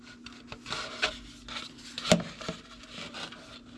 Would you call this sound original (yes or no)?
yes